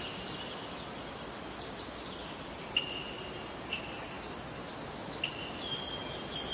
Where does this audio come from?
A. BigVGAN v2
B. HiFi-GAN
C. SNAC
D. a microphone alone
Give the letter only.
D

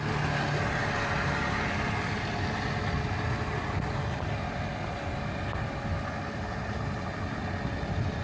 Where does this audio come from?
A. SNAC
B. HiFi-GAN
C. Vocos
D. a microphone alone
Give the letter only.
D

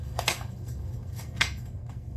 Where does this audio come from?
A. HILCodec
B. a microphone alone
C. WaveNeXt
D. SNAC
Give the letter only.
D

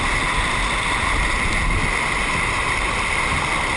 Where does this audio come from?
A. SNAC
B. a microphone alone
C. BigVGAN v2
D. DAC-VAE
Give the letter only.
B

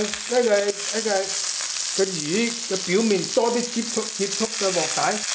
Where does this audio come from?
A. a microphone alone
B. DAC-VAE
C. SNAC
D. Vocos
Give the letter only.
A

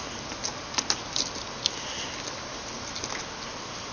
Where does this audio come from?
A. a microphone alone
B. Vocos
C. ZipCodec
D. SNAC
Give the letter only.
A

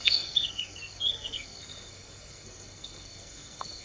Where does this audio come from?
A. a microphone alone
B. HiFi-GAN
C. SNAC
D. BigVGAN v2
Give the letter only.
C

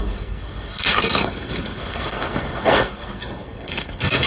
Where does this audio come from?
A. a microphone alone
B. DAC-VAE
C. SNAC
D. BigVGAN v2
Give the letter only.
C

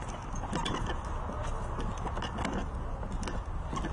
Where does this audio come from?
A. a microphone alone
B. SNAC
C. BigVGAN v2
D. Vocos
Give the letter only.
A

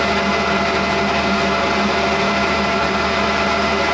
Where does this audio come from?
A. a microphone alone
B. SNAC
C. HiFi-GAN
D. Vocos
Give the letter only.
A